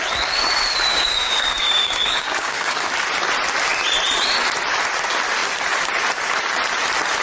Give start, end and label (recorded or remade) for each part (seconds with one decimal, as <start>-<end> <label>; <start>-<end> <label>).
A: 0.0-0.9 recorded; 0.9-2.8 remade; 2.8-7.2 recorded